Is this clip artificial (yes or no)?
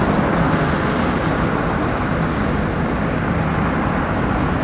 no